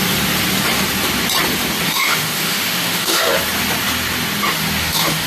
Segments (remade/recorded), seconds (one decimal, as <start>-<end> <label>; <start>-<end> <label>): 0.0-1.9 recorded; 1.9-3.3 remade; 3.3-4.8 recorded; 4.8-5.3 remade

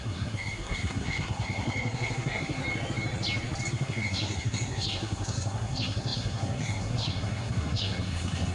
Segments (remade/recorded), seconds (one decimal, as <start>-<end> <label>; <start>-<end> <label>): 0.0-2.6 remade; 2.6-3.7 recorded; 3.7-8.5 remade

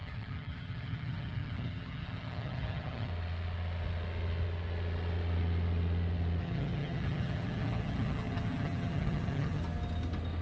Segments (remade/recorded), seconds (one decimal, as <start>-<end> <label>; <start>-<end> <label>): 0.0-3.1 remade; 3.1-6.4 recorded; 6.4-9.6 remade; 9.6-10.4 recorded

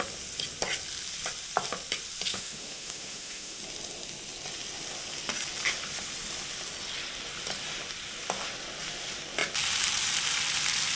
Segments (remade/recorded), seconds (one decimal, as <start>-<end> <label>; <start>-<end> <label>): 0.0-2.3 recorded; 2.3-3.6 remade; 3.6-11.0 recorded

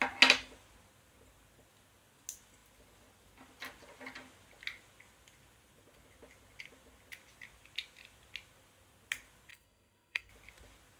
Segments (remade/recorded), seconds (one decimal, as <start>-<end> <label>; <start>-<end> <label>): 0.0-9.5 recorded; 9.5-10.3 remade; 10.3-11.0 recorded

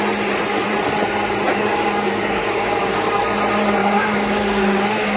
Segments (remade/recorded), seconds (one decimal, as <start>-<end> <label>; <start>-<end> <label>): 0.0-1.5 recorded; 1.5-3.2 remade; 3.2-3.8 recorded; 3.8-5.2 remade

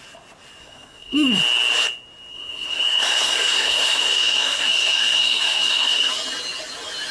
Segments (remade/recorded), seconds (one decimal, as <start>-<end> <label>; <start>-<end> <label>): 0.0-0.6 recorded; 0.6-1.4 remade; 1.4-2.3 recorded; 2.3-6.1 remade; 6.1-7.1 recorded